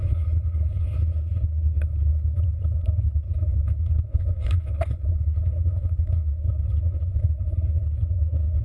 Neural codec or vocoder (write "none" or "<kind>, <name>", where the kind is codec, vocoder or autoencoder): codec, HILCodec